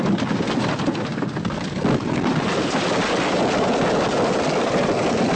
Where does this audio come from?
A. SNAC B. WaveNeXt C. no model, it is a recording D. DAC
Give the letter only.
C